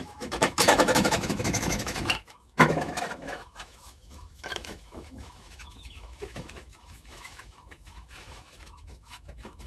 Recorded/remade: remade